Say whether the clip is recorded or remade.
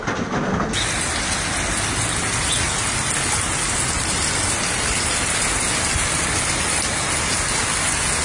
recorded